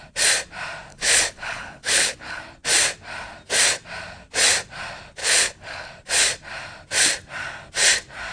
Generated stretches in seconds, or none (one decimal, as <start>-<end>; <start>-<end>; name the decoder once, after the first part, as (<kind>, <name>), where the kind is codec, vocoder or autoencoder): 0.9-2.4 (codec, HILCodec); 5.2-5.9

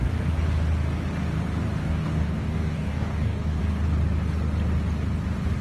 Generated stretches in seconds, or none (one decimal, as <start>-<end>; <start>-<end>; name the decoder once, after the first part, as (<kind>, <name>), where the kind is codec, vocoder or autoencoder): 1.8-3.6 (codec, DAC)

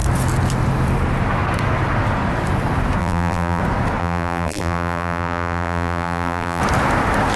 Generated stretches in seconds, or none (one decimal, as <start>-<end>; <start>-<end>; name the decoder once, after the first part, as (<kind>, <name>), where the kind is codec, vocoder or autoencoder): 3.0-3.6 (vocoder, BigVGAN v2); 4.0-6.6

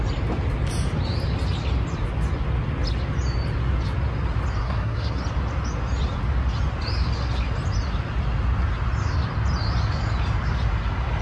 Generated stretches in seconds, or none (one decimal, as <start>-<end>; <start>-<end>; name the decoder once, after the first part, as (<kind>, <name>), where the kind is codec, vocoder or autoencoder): 4.6-5.2 (codec, SNAC)

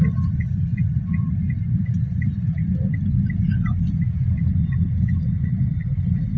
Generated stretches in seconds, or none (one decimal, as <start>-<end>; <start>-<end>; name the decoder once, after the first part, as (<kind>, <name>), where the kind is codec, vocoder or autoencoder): none